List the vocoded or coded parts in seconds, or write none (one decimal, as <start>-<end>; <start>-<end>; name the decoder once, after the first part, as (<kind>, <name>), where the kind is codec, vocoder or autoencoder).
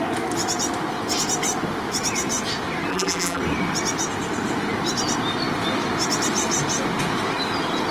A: 2.9-3.4 (vocoder, BigVGAN v2)